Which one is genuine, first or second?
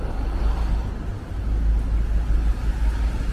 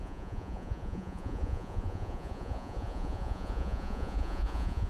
first